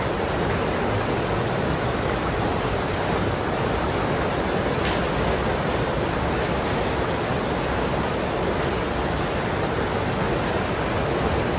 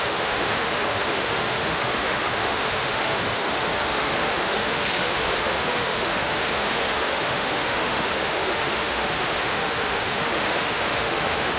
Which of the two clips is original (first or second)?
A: first